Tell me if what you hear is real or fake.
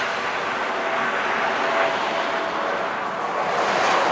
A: real